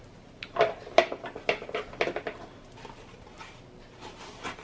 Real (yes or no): yes